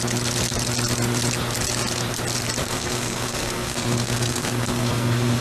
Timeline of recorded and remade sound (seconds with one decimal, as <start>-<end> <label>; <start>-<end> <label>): 0.0-2.6 recorded; 2.6-5.4 remade